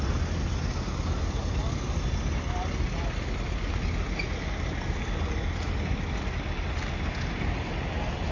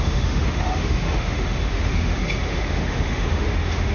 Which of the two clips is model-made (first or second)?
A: second